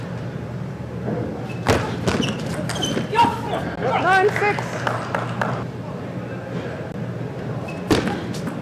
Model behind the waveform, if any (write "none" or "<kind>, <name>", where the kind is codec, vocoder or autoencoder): none